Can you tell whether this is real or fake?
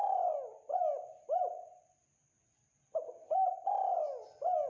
real